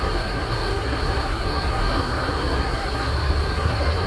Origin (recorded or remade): remade